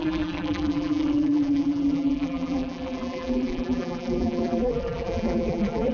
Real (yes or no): no